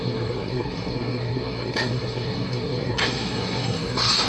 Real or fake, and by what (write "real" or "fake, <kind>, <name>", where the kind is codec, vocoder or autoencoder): fake, codec, SNAC